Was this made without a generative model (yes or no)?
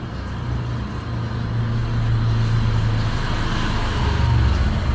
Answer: yes